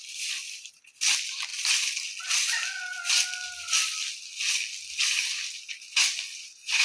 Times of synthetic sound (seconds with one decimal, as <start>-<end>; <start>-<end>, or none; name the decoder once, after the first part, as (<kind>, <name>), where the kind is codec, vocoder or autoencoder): none